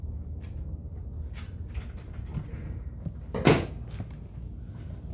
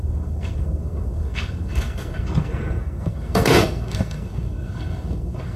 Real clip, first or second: first